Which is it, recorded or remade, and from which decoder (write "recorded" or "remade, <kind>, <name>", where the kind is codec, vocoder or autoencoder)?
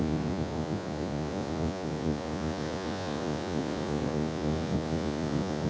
remade, vocoder, Vocos